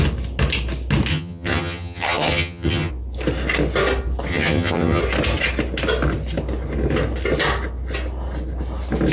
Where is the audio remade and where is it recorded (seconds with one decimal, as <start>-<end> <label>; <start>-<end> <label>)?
0.0-1.1 recorded; 1.1-2.9 remade; 2.9-4.3 recorded; 4.3-5.0 remade; 5.0-9.1 recorded